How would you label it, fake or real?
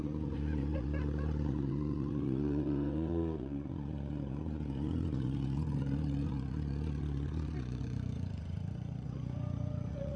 fake